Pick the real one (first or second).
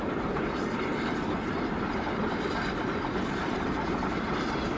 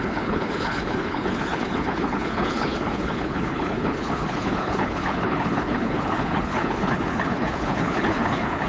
first